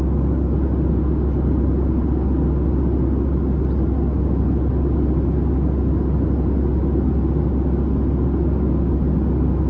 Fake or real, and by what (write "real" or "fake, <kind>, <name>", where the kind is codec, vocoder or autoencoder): real